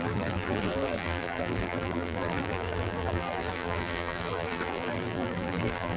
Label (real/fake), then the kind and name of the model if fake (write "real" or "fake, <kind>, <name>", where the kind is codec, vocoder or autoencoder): fake, vocoder, BigVGAN v2